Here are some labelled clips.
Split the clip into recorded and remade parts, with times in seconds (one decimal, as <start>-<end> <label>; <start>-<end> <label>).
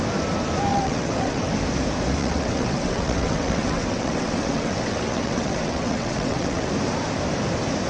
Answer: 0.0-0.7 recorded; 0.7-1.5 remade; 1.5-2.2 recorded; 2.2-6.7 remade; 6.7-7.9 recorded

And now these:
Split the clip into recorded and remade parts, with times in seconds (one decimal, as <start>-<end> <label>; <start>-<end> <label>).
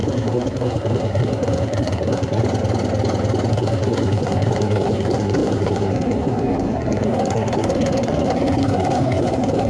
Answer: 0.0-2.4 remade; 2.4-3.5 recorded; 3.5-9.7 remade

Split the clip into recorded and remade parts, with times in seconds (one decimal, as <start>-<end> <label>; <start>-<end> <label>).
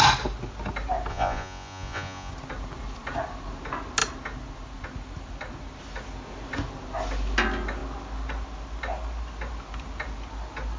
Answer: 0.0-1.1 recorded; 1.1-2.3 remade; 2.3-10.8 recorded